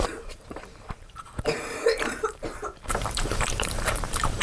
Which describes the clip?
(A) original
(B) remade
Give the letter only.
B